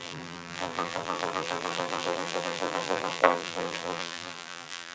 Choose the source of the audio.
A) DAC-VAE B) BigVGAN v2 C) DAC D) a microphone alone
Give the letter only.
B